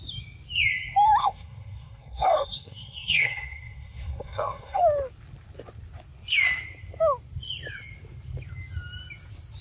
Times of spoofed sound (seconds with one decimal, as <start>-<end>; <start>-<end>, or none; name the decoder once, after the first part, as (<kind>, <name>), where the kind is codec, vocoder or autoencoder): 1.2-4.8 (codec, SNAC)